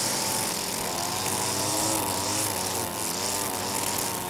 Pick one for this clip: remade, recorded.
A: recorded